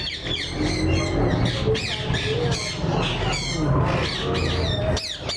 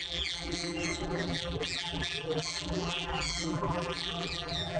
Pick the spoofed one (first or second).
second